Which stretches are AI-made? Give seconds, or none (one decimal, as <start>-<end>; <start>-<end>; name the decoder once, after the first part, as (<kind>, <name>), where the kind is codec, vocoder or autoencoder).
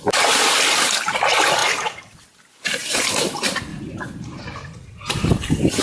1.6-3.1 (vocoder, BigVGAN v2); 3.7-4.4